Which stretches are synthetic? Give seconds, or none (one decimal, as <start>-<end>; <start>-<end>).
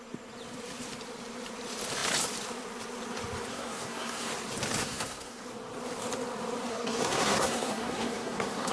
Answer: 3.5-4.3; 4.8-5.4; 6.7-8.7